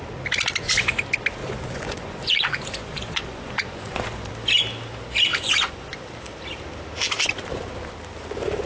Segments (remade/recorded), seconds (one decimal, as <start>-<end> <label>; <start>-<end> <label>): 0.0-1.4 recorded; 1.4-4.3 remade; 4.3-5.3 recorded; 5.3-6.0 remade; 6.0-8.7 recorded